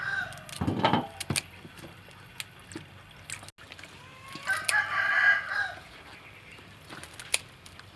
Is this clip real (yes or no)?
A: yes